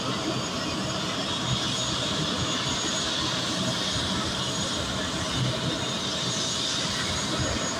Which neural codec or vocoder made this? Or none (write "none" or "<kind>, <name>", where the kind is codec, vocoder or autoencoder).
none